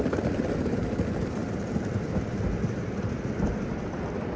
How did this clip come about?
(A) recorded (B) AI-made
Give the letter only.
B